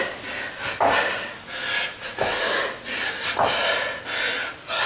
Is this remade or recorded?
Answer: recorded